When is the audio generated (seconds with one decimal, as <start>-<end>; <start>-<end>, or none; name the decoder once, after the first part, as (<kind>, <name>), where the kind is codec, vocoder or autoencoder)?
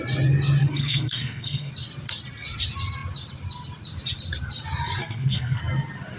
0.6-1.7 (codec, SNAC); 5.0-5.6